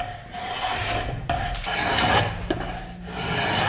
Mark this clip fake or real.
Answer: fake